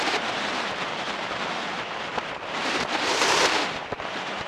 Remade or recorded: remade